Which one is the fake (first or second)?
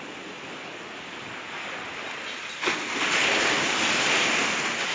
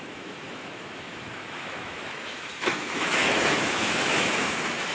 second